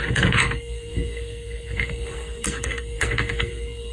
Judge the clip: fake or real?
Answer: fake